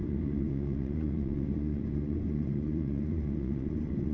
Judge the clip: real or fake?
fake